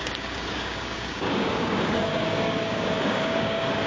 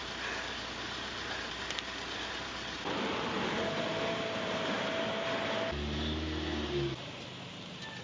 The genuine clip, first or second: second